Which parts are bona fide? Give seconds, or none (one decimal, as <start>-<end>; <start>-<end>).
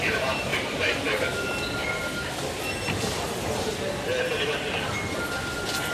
0.0-5.9